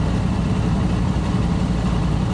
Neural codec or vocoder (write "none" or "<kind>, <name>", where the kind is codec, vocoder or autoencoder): none